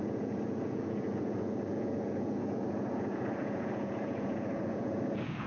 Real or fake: fake